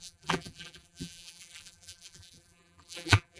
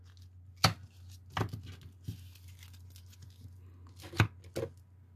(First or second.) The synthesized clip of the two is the first